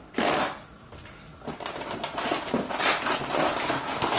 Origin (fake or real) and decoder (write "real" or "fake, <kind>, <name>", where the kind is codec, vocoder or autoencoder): real